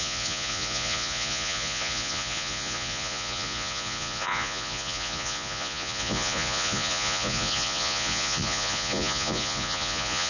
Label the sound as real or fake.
fake